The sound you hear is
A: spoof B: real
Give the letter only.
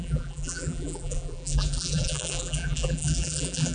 A